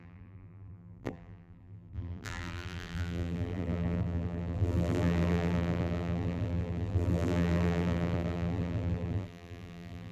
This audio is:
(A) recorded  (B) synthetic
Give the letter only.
B